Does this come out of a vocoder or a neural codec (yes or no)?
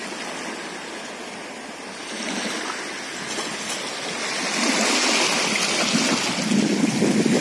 no